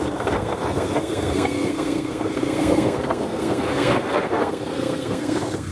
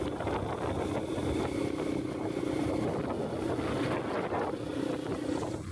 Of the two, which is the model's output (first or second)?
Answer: first